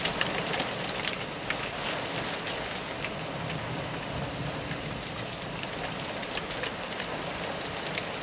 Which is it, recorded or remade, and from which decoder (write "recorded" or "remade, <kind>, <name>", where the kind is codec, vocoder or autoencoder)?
recorded